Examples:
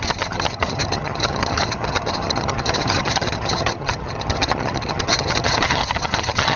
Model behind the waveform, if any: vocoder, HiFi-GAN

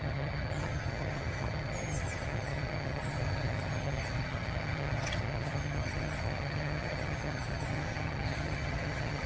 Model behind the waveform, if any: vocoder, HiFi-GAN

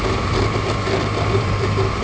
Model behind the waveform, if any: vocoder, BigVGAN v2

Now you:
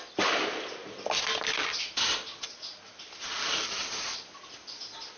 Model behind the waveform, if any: none